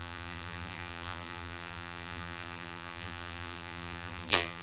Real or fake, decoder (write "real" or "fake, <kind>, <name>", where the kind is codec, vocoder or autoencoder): fake, vocoder, BigVGAN v2